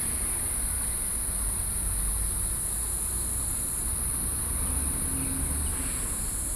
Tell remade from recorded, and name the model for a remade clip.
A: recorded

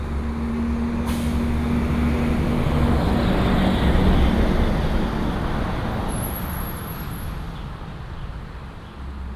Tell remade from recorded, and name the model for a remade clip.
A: recorded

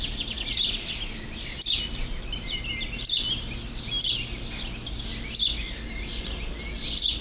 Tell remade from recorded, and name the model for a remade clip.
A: recorded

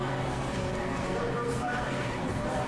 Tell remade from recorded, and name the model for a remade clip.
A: remade, codec, SNAC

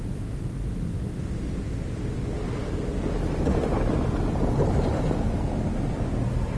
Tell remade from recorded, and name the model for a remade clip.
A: recorded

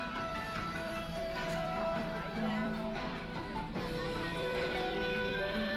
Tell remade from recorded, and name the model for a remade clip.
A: remade, vocoder, BigVGAN v2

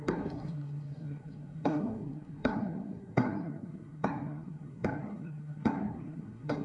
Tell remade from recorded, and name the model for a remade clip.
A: remade, codec, SNAC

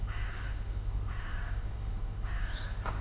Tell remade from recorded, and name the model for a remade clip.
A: remade, autoencoder, DAC-VAE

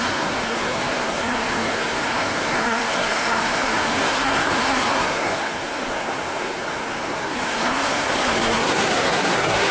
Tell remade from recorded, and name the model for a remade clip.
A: remade, codec, SNAC